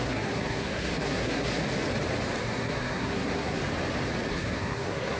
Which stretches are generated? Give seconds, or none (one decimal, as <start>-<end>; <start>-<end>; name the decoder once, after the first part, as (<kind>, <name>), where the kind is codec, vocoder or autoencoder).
0.0-1.6 (codec, SNAC); 2.4-3.6; 4.3-5.2